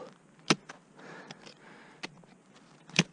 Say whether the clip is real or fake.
real